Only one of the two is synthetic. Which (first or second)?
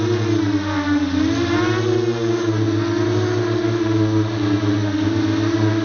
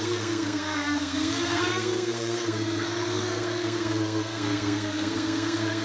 second